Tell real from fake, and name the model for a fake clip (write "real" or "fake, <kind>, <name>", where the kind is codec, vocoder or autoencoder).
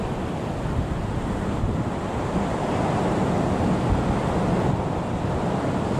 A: real